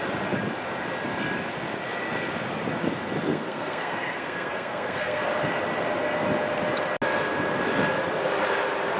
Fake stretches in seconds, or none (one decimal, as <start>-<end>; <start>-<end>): 3.3-5.2